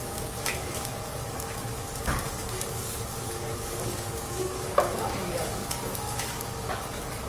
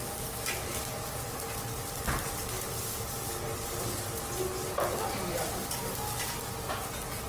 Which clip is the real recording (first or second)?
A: second